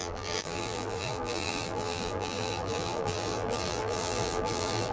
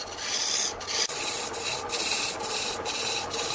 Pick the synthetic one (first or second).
first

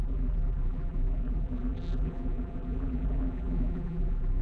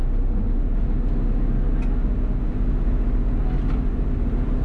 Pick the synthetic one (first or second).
first